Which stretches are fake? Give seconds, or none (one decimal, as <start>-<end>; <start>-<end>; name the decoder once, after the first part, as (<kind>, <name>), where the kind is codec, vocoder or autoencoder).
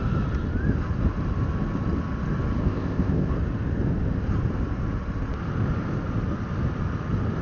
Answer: 2.6-3.3 (codec, ZipCodec)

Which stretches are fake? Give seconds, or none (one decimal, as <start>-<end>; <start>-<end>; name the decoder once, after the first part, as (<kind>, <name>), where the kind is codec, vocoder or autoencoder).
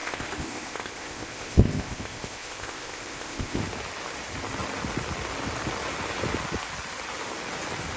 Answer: 0.0-3.6 (codec, ZipCodec)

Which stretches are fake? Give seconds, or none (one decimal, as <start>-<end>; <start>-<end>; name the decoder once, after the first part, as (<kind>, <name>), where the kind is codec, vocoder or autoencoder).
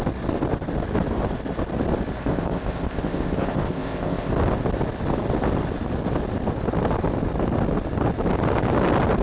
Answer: 2.2-4.3 (codec, ZipCodec)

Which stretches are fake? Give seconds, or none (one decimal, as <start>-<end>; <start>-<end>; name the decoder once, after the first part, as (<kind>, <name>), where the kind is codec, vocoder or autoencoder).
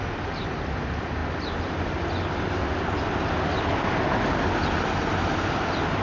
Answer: none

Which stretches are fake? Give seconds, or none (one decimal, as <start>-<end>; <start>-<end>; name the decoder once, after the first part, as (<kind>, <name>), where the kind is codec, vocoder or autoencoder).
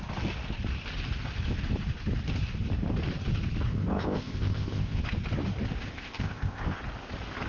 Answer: 3.7-5.0 (codec, ZipCodec); 5.9-6.8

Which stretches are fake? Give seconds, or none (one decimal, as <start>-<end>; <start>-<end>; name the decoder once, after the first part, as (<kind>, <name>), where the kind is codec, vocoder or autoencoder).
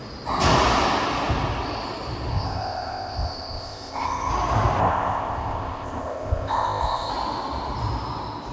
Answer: 2.3-4.3 (codec, ZipCodec); 4.8-7.1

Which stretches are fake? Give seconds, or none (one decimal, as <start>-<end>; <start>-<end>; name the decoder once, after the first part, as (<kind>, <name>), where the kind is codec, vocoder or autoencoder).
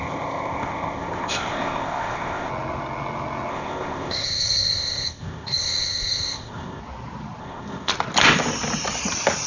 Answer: 0.0-2.5 (codec, ZipCodec); 3.5-6.8; 7.4-7.9